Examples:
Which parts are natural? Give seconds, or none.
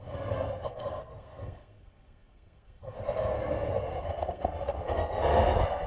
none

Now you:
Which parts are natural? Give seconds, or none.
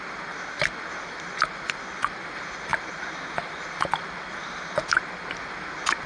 0.0-6.1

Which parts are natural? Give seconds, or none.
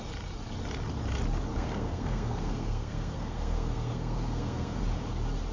0.0-1.5; 4.8-5.5